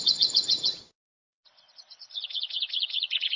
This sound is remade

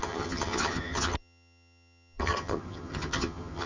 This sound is remade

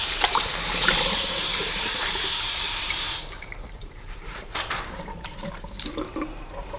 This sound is remade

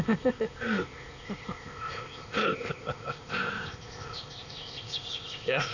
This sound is remade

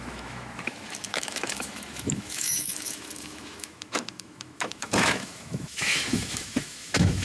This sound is remade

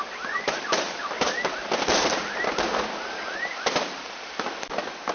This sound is recorded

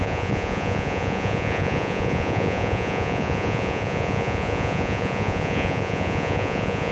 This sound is remade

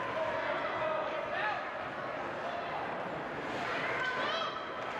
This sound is recorded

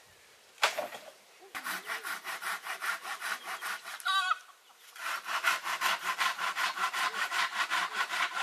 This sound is remade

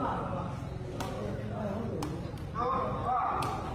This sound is recorded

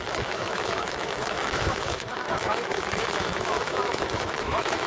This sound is remade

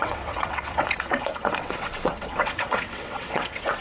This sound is remade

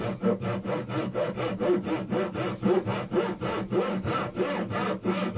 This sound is recorded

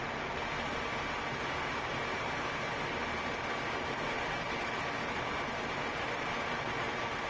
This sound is recorded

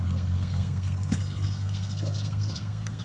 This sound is remade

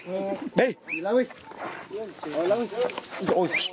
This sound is recorded